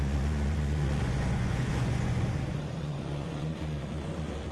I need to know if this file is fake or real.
fake